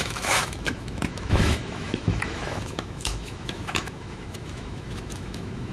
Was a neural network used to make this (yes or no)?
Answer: yes